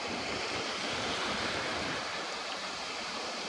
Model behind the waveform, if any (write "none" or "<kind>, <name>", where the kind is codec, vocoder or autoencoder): vocoder, BigVGAN v2